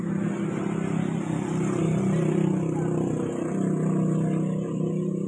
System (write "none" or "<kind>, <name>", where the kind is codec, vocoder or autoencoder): none